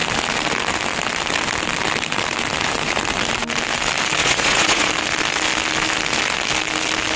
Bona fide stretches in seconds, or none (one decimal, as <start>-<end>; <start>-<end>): 0.0-4.2; 4.9-7.2